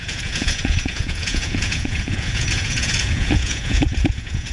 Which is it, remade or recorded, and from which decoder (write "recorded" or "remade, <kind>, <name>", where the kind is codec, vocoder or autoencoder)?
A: remade, vocoder, Vocos